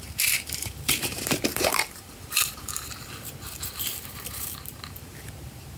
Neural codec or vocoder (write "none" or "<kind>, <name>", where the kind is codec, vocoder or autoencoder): vocoder, BigVGAN v2